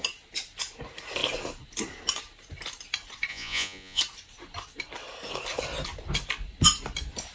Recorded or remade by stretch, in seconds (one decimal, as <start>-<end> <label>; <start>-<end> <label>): 0.0-3.3 recorded; 3.3-4.0 remade; 4.0-7.3 recorded